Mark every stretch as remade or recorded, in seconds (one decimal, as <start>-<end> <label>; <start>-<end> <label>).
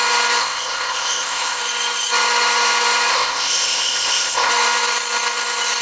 0.0-0.4 recorded; 0.4-1.6 remade; 1.6-3.1 recorded; 3.1-4.5 remade; 4.5-5.8 recorded